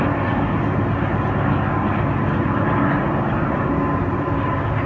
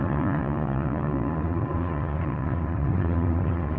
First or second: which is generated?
second